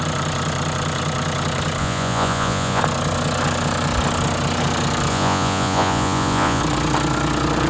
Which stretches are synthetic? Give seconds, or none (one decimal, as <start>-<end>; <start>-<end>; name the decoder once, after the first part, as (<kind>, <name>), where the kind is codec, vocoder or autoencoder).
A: 1.8-2.8 (vocoder, Vocos); 5.1-6.6